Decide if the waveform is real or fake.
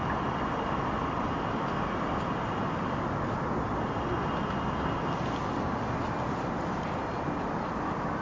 real